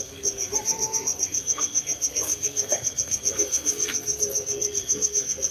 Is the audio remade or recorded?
remade